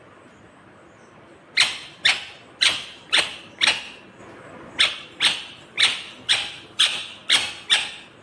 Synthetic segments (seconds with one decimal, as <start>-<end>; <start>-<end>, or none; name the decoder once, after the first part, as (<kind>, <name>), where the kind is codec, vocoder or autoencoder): 0.0-4.2 (vocoder, BigVGAN v2); 4.8-7.2

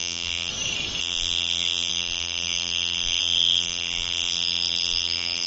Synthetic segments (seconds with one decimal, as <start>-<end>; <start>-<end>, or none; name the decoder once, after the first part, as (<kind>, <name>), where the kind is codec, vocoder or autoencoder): 0.0-0.5 (vocoder, BigVGAN v2); 1.0-5.5

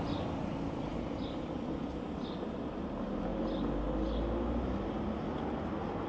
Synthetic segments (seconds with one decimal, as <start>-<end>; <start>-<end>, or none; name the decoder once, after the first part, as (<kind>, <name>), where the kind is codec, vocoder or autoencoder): 0.9-2.7 (vocoder, BigVGAN v2)